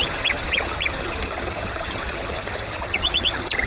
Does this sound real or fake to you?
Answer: fake